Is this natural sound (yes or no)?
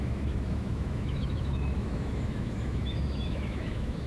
no